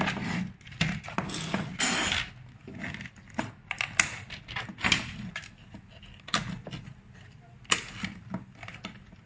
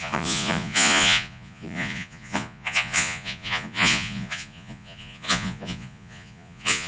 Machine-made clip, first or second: second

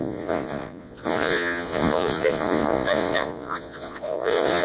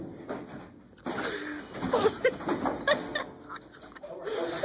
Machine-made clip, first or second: first